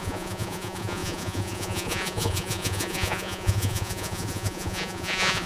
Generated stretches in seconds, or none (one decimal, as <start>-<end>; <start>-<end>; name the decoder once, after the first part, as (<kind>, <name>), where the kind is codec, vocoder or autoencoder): 0.0-5.5 (vocoder, Vocos)